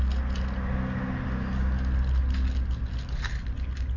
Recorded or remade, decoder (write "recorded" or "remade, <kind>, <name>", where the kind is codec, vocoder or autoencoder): recorded